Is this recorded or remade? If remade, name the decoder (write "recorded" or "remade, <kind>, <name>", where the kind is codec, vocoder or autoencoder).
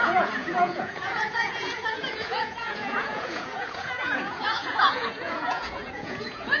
remade, vocoder, Vocos